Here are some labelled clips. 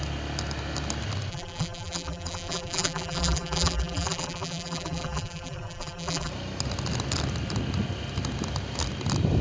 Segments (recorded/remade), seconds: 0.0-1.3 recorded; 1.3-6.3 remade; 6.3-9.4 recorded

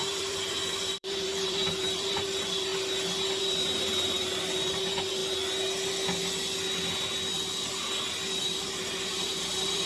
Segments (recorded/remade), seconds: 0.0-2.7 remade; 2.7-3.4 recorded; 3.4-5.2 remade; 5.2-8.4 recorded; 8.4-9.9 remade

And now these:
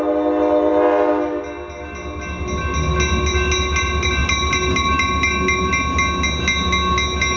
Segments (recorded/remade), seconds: 0.0-7.4 recorded

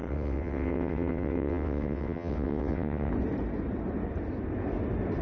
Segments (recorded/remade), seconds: 0.0-3.1 remade; 3.1-5.2 recorded

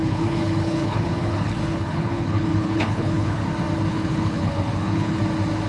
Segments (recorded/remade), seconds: 0.0-3.4 remade; 3.4-3.9 recorded; 3.9-5.2 remade; 5.2-5.7 recorded

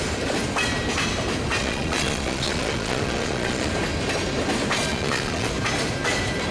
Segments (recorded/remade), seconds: 0.0-1.6 recorded; 1.6-3.7 remade; 3.7-4.9 recorded; 4.9-5.5 remade; 5.5-6.5 recorded

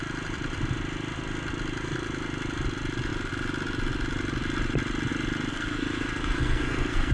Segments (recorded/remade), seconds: 0.0-5.5 recorded; 5.5-7.1 remade

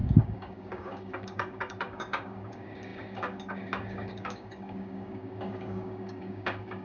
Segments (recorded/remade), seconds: 0.0-6.8 remade